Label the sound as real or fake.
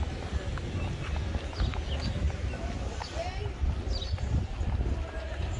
real